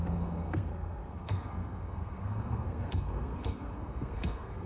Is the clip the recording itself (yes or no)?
no